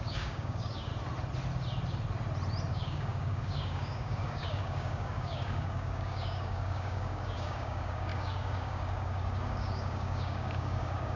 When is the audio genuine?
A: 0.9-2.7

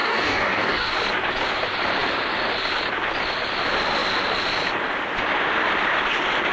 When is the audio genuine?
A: 0.9-6.5